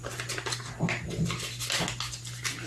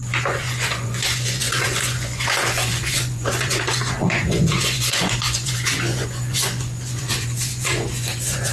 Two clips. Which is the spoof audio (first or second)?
second